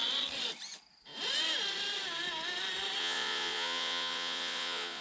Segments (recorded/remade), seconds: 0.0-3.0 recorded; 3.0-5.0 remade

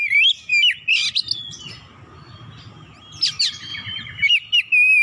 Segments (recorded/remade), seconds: 0.0-3.7 recorded; 3.7-4.3 remade; 4.3-5.0 recorded